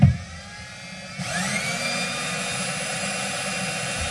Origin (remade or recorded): recorded